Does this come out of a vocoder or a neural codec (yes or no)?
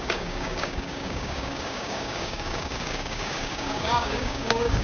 yes